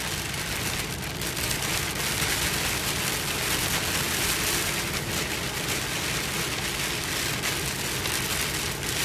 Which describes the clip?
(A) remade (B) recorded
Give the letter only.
B